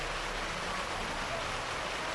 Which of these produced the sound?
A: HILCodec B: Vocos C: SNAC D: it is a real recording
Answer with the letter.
D